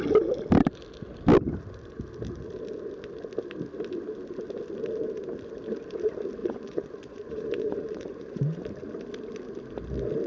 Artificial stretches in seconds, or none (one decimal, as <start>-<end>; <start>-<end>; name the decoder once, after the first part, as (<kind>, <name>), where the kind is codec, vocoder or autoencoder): 6.4-8.6 (vocoder, Vocos)